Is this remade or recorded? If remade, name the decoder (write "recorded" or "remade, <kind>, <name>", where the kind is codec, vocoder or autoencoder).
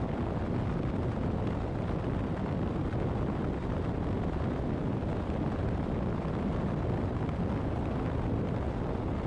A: recorded